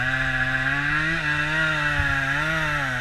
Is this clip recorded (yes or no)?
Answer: yes